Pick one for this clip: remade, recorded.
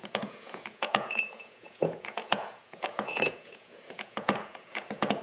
remade